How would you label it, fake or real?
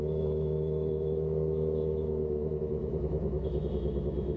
fake